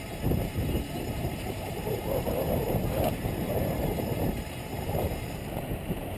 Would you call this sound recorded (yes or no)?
no